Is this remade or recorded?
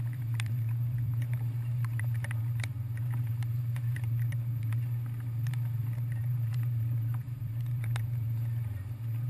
remade